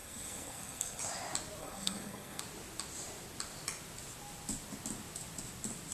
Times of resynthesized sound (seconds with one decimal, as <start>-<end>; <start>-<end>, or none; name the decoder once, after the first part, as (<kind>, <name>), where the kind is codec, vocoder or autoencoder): 0.0-1.0 (codec, SNAC); 1.6-2.4